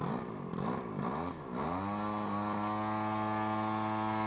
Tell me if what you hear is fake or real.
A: real